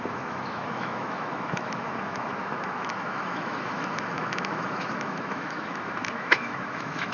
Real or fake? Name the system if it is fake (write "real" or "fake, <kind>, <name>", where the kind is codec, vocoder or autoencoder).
fake, autoencoder, DAC-VAE